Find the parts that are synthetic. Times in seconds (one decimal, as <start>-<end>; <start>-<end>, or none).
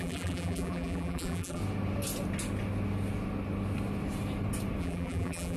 0.0-1.6; 4.8-5.6